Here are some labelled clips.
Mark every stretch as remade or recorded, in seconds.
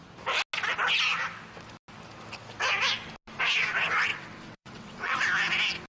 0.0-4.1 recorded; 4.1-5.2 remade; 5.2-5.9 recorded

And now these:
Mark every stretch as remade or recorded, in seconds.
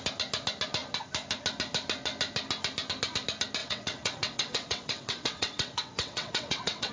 0.0-3.6 recorded; 3.6-6.9 remade